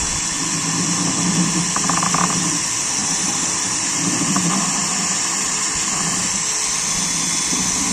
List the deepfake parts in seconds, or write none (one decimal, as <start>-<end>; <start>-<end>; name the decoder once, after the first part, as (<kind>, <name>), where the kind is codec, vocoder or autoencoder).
3.0-4.6 (vocoder, BigVGAN v2)